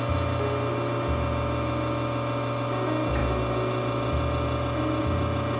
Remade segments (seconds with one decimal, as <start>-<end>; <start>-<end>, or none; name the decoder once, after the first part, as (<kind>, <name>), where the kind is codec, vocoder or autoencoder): none